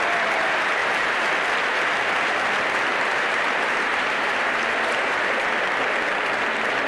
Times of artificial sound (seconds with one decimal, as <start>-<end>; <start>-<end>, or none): 0.8-1.4; 2.9-5.5